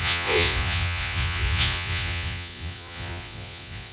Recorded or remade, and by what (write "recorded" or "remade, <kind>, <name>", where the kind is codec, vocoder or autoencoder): remade, vocoder, Vocos